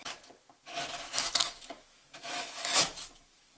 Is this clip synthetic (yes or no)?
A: yes